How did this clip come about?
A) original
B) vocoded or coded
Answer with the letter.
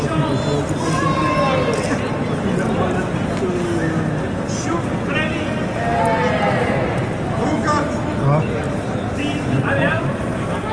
A